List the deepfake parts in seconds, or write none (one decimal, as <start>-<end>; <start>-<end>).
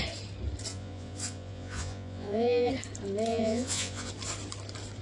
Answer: 0.7-2.7; 3.3-4.1